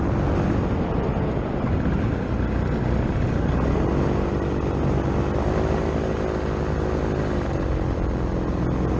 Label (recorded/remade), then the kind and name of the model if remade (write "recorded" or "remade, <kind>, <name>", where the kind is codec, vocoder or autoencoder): recorded